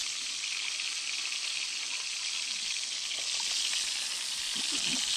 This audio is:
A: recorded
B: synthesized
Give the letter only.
A